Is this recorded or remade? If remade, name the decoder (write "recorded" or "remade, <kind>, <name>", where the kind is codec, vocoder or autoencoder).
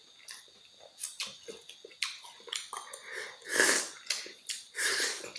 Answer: recorded